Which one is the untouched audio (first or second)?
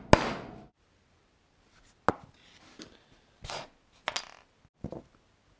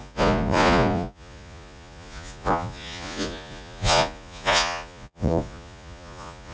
first